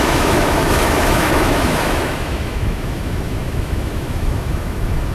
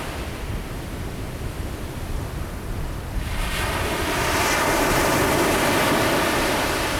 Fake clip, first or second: first